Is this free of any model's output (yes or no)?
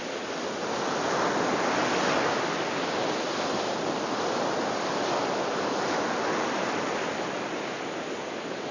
yes